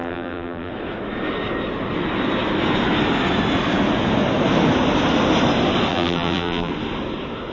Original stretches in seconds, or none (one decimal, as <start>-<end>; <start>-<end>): 0.7-5.9; 6.7-7.5